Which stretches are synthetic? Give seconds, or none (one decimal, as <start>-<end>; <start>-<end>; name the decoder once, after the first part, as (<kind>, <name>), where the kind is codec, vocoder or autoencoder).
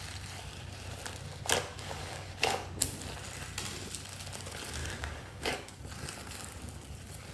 1.7-2.8 (codec, DAC); 4.8-5.8